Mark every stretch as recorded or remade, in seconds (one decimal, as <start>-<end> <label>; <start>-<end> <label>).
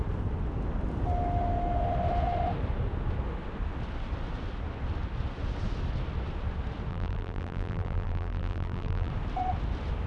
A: 0.0-6.9 recorded; 6.9-9.1 remade; 9.1-10.1 recorded